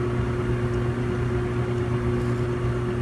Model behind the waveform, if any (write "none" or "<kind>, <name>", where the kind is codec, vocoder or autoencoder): none